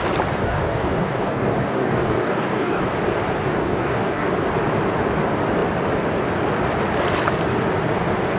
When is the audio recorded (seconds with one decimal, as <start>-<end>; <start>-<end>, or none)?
0.0-0.4; 2.8-3.4; 4.3-8.4